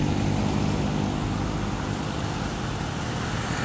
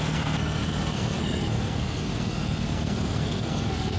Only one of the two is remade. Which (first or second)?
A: second